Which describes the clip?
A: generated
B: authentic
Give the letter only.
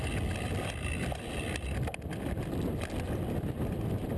B